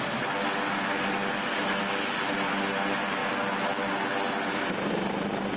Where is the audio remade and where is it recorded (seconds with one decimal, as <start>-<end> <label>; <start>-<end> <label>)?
0.0-5.6 recorded